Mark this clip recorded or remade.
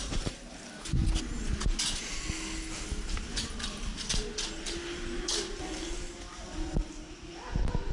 recorded